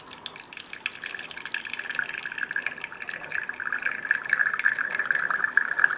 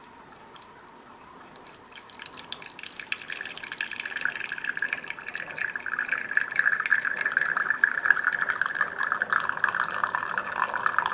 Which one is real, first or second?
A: first